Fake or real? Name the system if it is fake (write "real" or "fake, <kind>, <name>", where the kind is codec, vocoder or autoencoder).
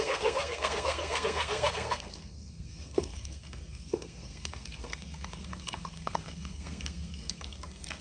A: fake, codec, SNAC